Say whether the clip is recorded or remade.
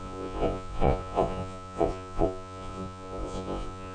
remade